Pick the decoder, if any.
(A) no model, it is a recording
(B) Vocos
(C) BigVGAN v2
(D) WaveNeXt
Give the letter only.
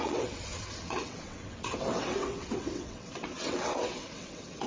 D